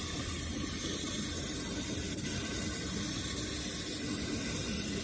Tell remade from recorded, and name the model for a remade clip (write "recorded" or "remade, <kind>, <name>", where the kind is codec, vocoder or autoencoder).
recorded